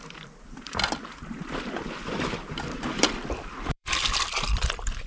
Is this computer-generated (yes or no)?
yes